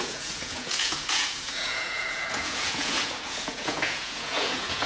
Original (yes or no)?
no